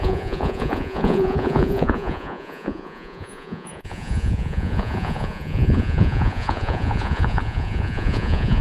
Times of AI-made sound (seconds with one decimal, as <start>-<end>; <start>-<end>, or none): 0.0-8.6